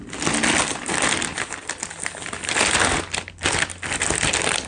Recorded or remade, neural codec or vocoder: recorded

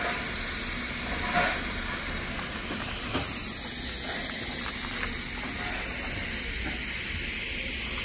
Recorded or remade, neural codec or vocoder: recorded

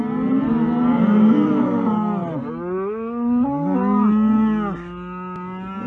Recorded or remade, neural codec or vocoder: recorded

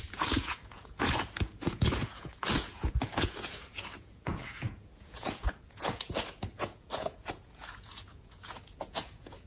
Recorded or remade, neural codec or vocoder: remade, vocoder, Vocos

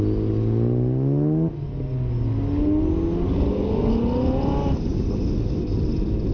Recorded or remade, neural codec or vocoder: recorded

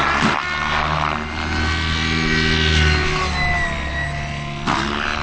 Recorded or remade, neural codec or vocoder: recorded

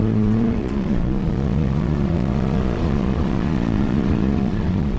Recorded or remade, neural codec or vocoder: remade, vocoder, Vocos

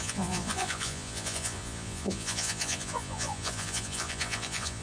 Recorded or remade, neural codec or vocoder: remade, vocoder, Vocos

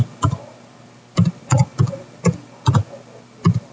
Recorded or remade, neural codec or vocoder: recorded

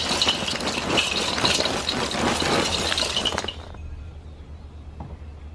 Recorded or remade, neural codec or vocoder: recorded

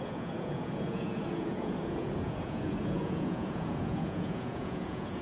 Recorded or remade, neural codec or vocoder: remade, vocoder, Vocos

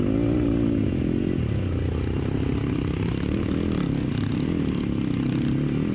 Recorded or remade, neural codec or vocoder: recorded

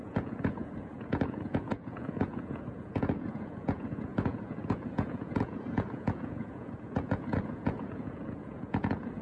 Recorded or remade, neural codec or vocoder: remade, vocoder, Vocos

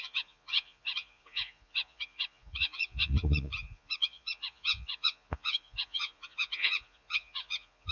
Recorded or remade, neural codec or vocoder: remade, vocoder, Vocos